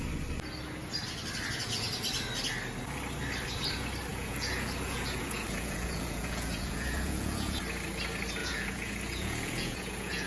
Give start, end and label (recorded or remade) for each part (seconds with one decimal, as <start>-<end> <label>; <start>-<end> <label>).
0.0-4.1 recorded; 4.1-7.6 remade; 7.6-8.4 recorded; 8.4-10.3 remade